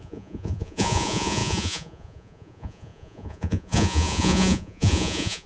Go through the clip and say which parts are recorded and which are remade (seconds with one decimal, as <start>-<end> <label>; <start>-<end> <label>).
0.0-5.5 remade